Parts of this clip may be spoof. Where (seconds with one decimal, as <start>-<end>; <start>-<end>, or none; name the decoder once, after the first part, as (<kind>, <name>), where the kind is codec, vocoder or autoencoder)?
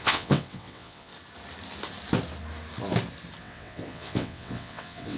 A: 0.0-1.1 (vocoder, WaveNeXt); 3.4-5.2